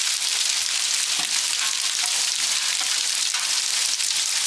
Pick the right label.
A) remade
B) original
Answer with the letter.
B